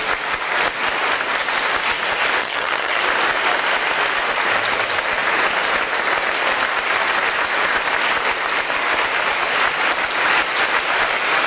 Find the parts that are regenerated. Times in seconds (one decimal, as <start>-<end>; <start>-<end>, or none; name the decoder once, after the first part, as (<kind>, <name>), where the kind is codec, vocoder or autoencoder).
2.4-3.0 (vocoder, HiFi-GAN)